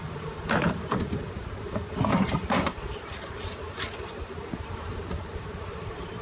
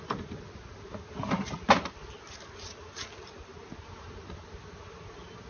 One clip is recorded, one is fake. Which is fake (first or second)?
first